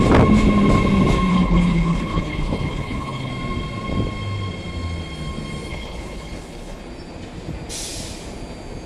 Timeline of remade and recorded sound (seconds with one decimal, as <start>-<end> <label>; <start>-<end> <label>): 0.0-1.3 recorded; 1.3-3.3 remade; 3.3-5.7 recorded; 5.7-6.8 remade; 6.8-8.9 recorded

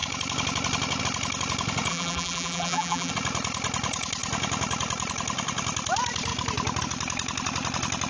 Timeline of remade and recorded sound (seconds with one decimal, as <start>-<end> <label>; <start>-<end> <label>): 0.0-1.9 recorded; 1.9-3.1 remade; 3.1-8.1 recorded

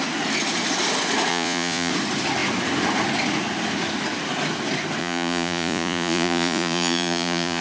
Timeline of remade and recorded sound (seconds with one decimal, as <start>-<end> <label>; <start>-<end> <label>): 0.0-1.3 recorded; 1.3-1.9 remade; 1.9-5.0 recorded; 5.0-7.6 remade

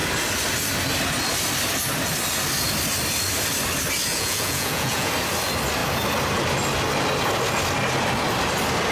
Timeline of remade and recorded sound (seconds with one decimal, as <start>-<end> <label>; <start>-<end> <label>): 0.0-4.1 recorded; 4.1-5.1 remade; 5.1-8.9 recorded

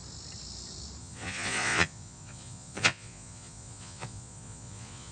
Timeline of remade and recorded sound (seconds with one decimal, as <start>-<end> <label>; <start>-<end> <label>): 0.0-1.0 recorded; 1.0-5.1 remade

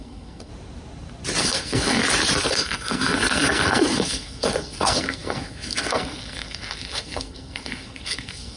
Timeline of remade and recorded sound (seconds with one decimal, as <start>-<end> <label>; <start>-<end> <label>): 0.0-0.5 remade; 0.5-1.4 recorded; 1.4-2.0 remade; 2.0-2.5 recorded; 2.5-8.6 remade

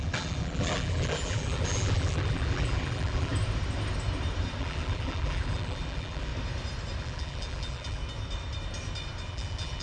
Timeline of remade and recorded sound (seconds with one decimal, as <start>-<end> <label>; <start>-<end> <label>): 0.0-3.3 remade; 3.3-4.6 recorded; 4.6-6.3 remade; 6.3-7.0 recorded; 7.0-8.0 remade; 8.0-9.3 recorded; 9.3-9.8 remade

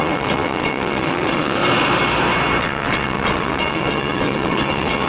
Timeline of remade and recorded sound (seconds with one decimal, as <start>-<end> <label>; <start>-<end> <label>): 0.0-1.6 remade; 1.6-2.6 recorded; 2.6-5.1 remade